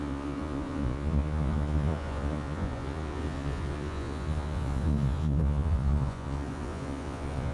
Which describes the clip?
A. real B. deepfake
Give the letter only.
B